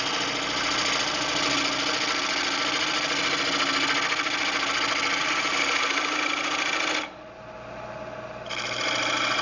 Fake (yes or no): no